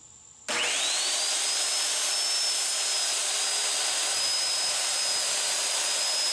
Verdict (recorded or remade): recorded